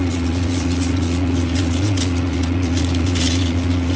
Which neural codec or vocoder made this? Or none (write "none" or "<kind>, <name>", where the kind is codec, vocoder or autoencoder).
vocoder, Vocos